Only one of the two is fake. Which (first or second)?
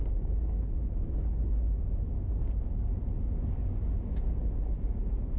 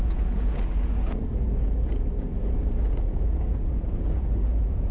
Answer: second